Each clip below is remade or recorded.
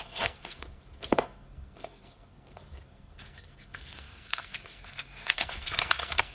remade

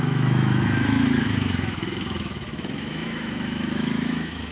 remade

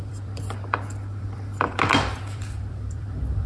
remade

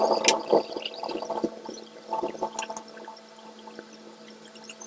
recorded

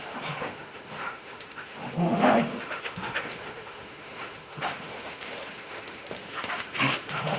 remade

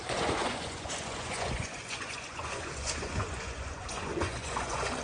remade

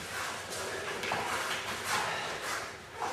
recorded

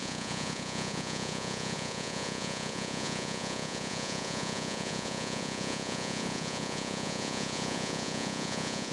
remade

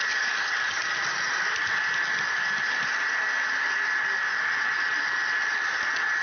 recorded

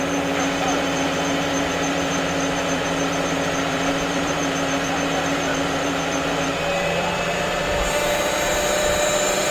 remade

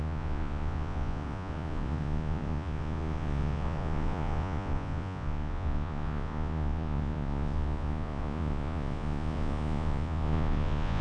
remade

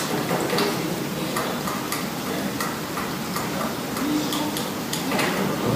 recorded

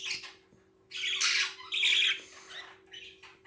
recorded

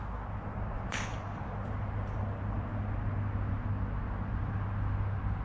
recorded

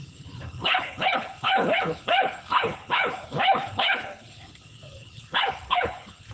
remade